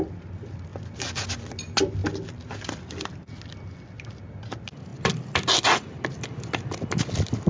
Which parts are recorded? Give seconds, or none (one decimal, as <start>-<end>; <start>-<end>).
0.0-7.5

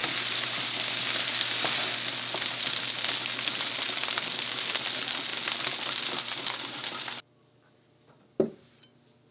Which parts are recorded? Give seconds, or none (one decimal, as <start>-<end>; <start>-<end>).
0.0-9.3